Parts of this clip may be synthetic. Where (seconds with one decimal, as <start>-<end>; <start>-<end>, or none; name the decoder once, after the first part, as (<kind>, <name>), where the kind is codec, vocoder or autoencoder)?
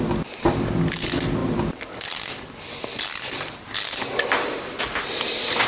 none